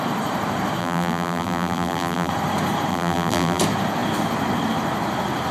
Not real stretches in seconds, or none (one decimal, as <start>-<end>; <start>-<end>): 0.8-2.3; 2.9-3.6